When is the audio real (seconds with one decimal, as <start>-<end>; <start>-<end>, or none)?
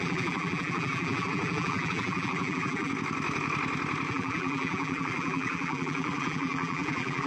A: 2.9-4.1